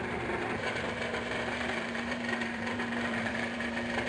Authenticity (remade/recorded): remade